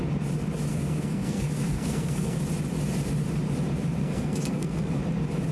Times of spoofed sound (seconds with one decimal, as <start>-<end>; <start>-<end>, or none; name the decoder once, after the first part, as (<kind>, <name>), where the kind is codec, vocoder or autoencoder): 0.7-2.4 (codec, SNAC); 4.0-5.0